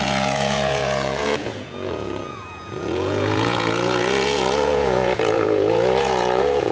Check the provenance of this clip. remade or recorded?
remade